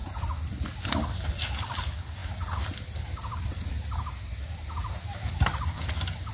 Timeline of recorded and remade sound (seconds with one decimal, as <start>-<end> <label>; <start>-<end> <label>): 0.0-6.3 recorded